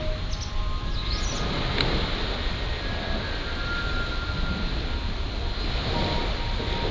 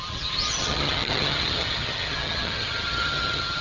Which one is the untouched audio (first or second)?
first